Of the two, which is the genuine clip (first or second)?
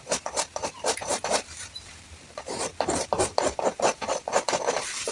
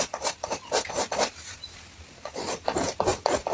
second